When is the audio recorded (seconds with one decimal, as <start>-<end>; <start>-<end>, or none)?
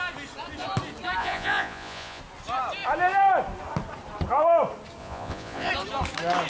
0.0-1.2; 2.2-5.0; 5.7-6.5